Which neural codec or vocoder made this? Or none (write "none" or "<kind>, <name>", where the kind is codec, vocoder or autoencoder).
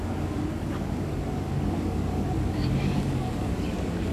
codec, DAC